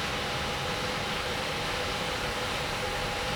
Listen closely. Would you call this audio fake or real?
real